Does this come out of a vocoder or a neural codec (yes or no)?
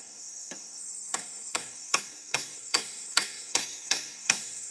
yes